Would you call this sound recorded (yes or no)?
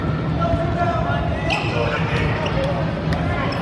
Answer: no